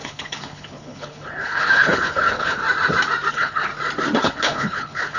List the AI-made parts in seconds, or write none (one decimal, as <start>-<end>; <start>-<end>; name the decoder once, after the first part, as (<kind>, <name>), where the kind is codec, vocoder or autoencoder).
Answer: 0.0-2.6 (codec, HILCodec); 3.3-3.7; 4.2-5.2